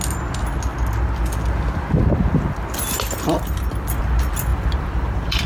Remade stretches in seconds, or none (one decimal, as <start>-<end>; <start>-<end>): 4.5-5.5